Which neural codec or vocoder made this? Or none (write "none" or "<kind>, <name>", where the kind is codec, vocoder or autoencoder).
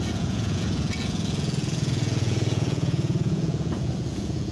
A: vocoder, Vocos